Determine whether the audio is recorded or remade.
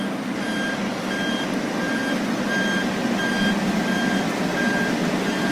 recorded